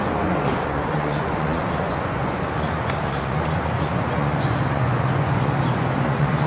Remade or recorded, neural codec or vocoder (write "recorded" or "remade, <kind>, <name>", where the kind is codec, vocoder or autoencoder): remade, vocoder, Vocos